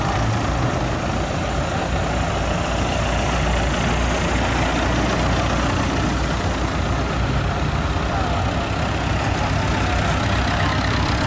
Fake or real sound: real